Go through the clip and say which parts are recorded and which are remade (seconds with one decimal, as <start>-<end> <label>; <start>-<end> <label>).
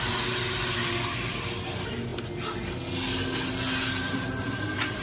0.0-5.0 recorded